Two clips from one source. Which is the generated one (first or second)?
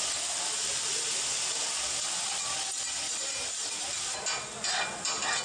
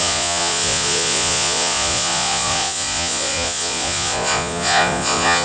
second